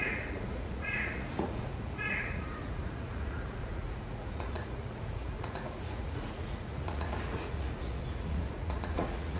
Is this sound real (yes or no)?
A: no